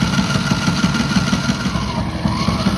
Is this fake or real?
real